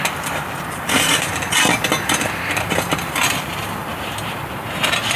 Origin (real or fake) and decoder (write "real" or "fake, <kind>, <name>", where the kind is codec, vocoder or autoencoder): fake, vocoder, BigVGAN v2